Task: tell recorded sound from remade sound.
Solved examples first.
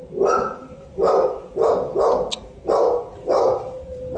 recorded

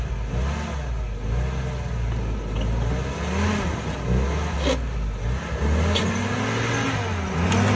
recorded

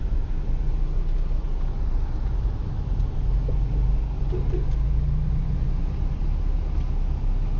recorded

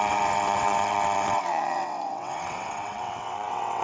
remade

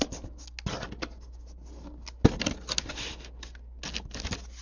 recorded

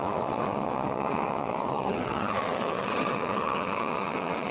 remade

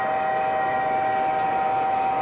recorded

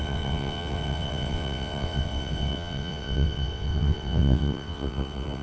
remade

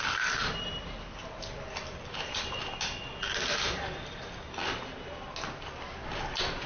recorded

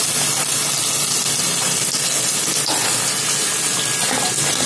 recorded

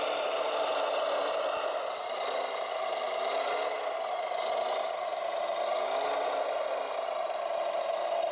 recorded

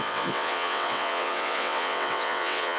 remade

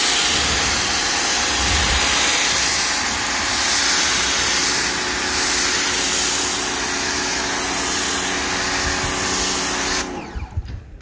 recorded